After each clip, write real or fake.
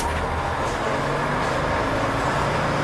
real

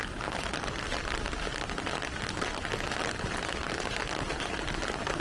real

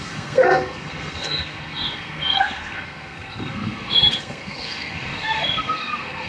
fake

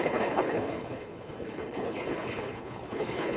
fake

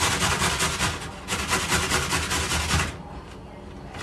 real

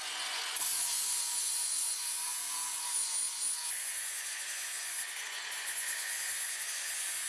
fake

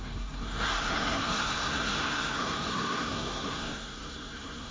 fake